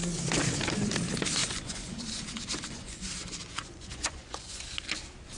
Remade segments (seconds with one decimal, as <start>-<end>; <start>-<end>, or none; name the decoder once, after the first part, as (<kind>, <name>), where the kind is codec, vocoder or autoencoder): 1.4-4.6 (vocoder, Vocos)